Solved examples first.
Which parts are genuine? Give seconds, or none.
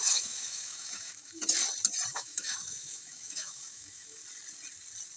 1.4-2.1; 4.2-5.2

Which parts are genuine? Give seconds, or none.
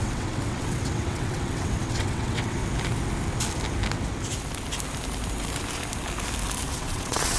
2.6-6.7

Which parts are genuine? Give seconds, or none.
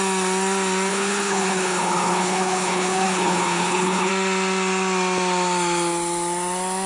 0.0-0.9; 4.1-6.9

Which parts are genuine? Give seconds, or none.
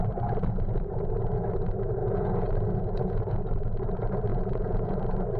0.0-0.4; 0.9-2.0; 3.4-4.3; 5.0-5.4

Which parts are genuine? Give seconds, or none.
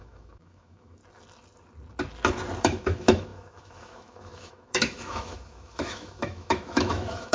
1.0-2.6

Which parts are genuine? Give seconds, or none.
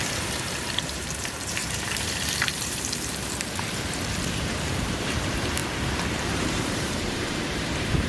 none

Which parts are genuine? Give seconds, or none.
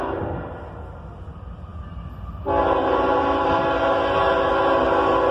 0.0-5.3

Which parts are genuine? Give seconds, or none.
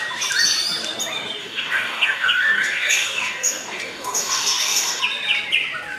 0.0-1.4; 5.0-6.0